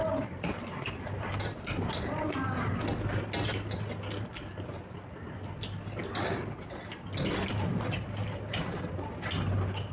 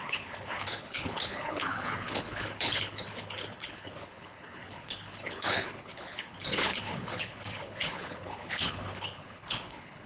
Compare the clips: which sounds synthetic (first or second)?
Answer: second